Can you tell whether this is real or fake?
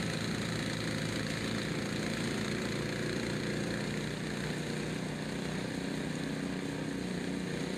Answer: real